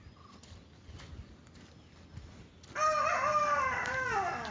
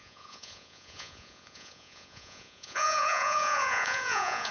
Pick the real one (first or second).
first